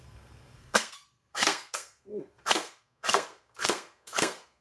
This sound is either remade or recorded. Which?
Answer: remade